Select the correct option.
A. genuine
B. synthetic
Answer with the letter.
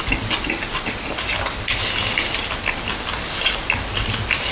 A